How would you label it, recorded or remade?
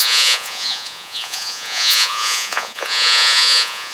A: remade